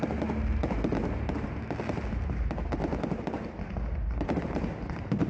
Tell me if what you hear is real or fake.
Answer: real